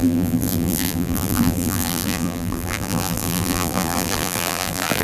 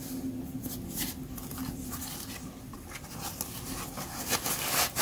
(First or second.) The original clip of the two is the second